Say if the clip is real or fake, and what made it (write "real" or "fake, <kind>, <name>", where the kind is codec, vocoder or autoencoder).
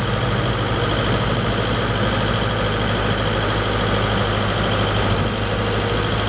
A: real